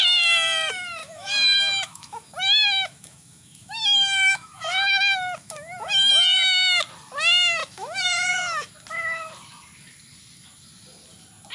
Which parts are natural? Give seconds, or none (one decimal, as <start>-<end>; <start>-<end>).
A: 0.0-1.0; 6.1-7.6; 8.7-11.5